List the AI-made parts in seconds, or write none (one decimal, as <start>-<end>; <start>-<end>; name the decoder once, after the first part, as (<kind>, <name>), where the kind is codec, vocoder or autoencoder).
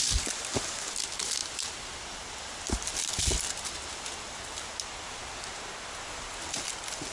none